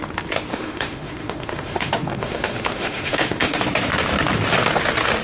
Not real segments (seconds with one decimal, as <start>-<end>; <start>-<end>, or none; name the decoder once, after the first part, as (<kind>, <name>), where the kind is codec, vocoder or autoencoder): 0.5-3.6 (autoencoder, DAC-VAE)